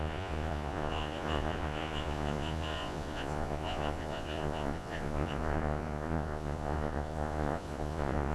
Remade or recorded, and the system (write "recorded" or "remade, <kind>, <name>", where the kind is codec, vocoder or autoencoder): remade, vocoder, Vocos